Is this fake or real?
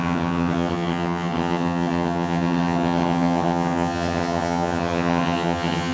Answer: fake